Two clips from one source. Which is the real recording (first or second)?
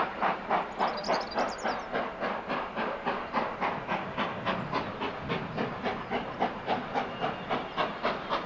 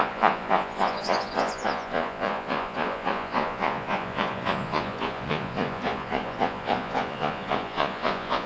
first